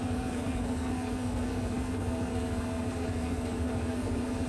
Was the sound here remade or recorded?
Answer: remade